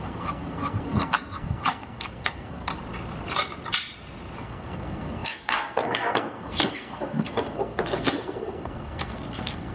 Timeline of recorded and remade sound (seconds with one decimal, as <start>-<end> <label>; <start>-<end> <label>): 0.0-2.7 remade; 2.7-4.4 recorded; 4.4-9.7 remade